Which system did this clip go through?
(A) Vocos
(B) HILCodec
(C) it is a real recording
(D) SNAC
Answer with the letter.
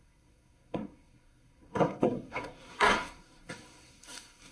D